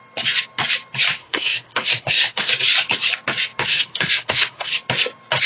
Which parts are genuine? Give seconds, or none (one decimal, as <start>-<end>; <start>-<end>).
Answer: 0.0-1.2; 2.5-3.7; 4.7-5.5